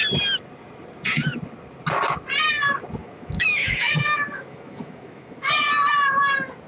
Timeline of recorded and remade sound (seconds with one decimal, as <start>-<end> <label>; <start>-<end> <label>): 0.0-3.0 recorded; 3.0-5.5 remade; 5.5-6.7 recorded